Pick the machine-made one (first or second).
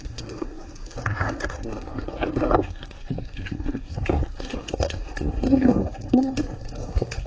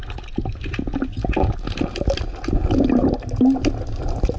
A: first